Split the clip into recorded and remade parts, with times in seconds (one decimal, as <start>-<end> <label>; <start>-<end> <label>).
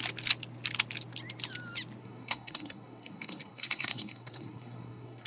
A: 0.0-2.0 recorded; 2.0-5.3 remade